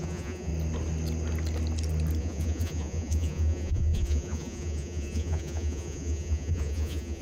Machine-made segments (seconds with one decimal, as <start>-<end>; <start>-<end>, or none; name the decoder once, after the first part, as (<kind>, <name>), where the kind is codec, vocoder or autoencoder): 0.0-0.5 (vocoder, Vocos); 2.2-7.2